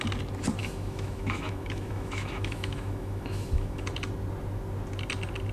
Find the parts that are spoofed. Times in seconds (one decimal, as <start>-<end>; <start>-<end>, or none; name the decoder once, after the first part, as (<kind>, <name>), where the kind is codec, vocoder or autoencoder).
0.6-3.9 (autoencoder, DAC-VAE)